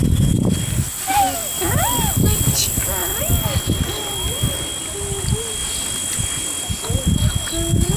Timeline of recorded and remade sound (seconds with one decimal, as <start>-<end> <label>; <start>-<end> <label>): 0.0-8.0 recorded